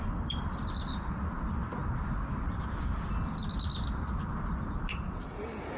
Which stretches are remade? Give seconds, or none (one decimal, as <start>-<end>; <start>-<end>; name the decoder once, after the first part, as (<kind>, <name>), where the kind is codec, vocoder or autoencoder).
none